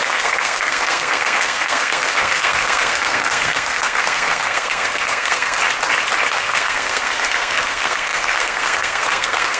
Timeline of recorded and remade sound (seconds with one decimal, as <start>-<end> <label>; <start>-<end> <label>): 0.0-5.6 remade; 5.6-6.3 recorded; 6.3-9.6 remade